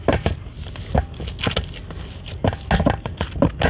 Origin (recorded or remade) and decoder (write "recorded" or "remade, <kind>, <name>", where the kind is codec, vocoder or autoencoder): recorded